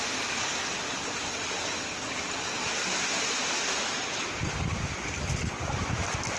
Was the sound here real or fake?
real